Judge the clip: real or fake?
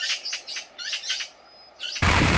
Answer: real